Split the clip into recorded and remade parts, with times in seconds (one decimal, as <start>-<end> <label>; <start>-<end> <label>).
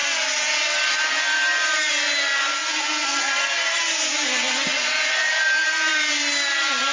0.0-6.9 recorded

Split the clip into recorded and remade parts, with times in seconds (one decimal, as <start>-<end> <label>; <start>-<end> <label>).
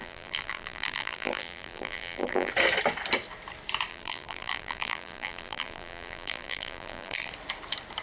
0.0-2.5 remade; 2.5-3.9 recorded; 3.9-7.3 remade; 7.3-8.0 recorded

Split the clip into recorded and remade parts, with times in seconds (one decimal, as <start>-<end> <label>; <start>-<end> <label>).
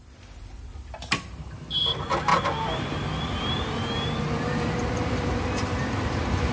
0.0-2.3 remade; 2.3-3.7 recorded; 3.7-6.5 remade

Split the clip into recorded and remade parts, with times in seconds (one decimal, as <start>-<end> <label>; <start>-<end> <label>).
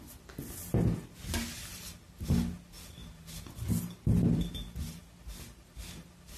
0.0-6.4 recorded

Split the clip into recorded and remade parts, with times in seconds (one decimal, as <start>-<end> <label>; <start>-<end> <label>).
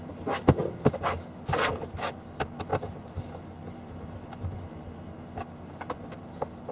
0.0-6.7 recorded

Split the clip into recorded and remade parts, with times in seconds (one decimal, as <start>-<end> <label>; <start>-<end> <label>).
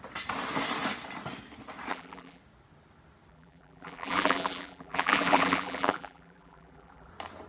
0.0-1.9 recorded; 1.9-2.4 remade; 2.4-3.3 recorded; 3.3-7.1 remade; 7.1-7.5 recorded